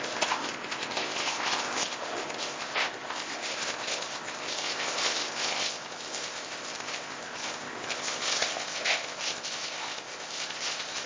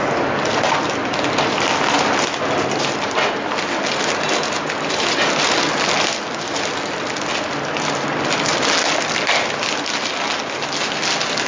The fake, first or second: first